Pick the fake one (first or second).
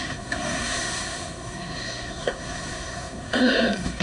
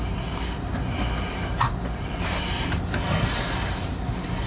first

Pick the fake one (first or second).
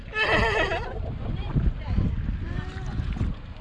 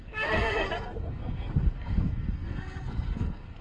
second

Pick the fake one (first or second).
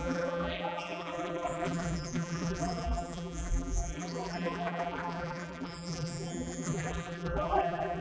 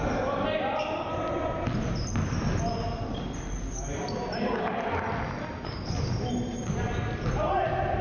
first